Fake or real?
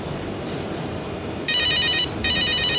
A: fake